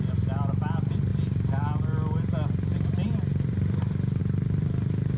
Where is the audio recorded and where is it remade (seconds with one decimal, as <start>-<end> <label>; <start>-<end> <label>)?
0.0-5.2 recorded